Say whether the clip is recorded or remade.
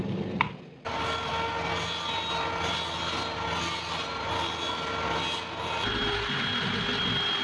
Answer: recorded